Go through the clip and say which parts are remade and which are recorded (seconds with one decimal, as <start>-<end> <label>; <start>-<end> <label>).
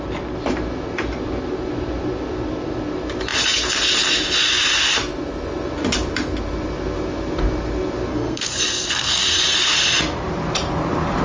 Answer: 0.0-8.1 recorded; 8.1-9.8 remade; 9.8-11.2 recorded